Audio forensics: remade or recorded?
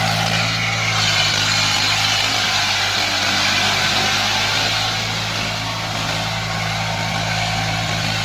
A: recorded